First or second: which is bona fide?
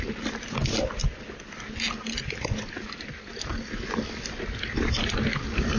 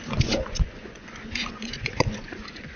first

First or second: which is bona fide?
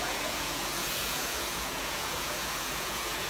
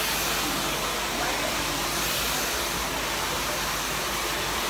second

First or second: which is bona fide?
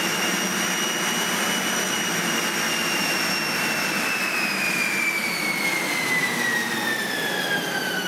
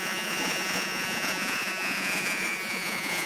first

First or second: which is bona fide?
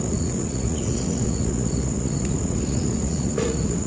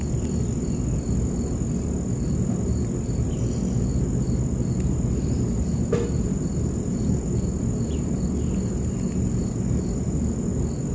second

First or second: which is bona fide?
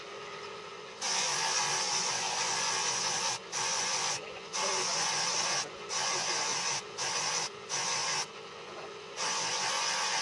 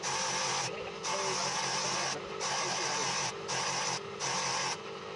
second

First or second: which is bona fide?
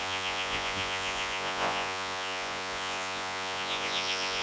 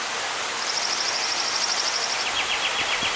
second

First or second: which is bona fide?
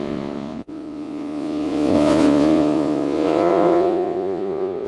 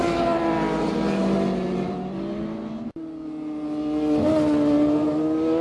second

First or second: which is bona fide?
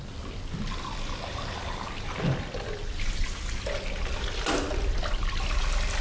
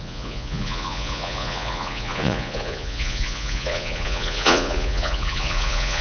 first